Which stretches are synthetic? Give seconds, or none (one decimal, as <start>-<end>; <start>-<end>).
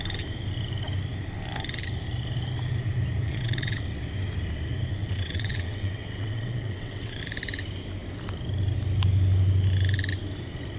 3.2-3.8; 5.0-7.2